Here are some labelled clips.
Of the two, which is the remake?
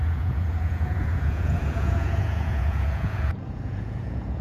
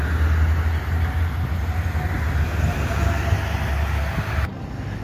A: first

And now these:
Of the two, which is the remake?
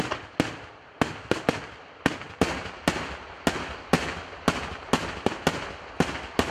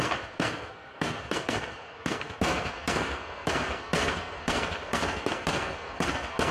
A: second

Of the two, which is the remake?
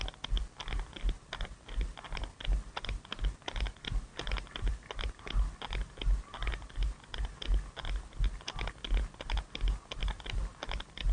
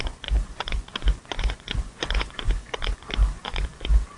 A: second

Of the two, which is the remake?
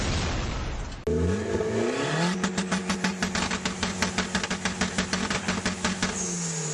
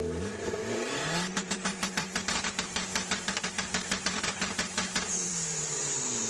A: second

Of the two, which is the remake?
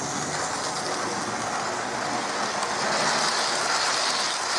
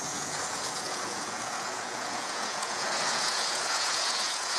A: second